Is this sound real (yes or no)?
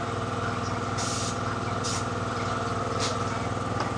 yes